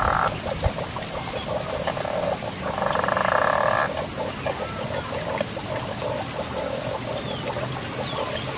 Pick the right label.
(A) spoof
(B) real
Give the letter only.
B